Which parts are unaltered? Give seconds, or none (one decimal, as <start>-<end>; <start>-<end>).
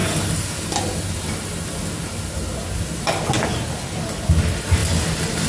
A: 0.0-5.5